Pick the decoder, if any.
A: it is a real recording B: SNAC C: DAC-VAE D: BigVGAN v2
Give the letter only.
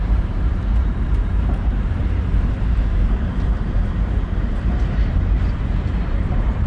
D